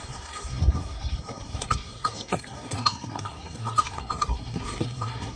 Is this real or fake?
fake